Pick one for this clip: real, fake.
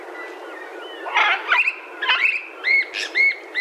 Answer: real